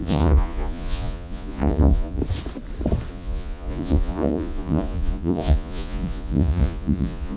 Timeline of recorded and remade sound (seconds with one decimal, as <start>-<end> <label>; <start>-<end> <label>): 0.0-2.2 remade; 2.2-3.1 recorded; 3.1-7.4 remade